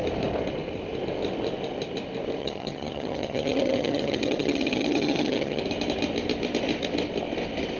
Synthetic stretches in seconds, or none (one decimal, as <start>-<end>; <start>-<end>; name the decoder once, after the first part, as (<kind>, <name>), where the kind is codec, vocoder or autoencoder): 2.4-5.6 (vocoder, HiFi-GAN)